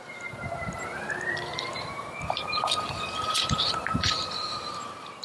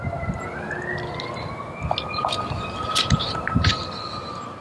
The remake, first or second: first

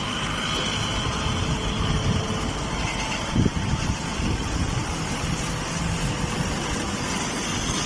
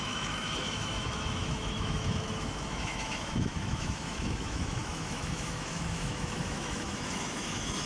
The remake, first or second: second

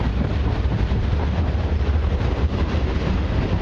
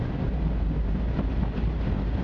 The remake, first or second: first